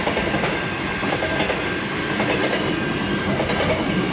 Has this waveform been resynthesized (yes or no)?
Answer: no